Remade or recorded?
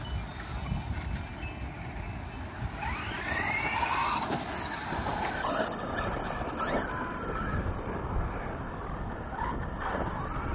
recorded